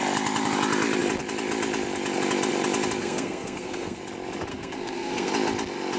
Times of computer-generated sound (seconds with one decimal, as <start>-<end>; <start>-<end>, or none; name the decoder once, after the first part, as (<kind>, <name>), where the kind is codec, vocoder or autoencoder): 3.0-4.0 (codec, SNAC); 4.5-5.3